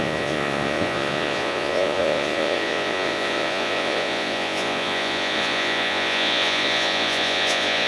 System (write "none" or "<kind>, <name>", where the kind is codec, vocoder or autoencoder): vocoder, Vocos